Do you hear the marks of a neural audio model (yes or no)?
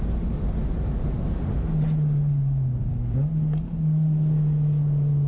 no